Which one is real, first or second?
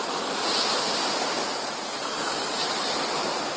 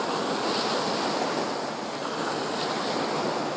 second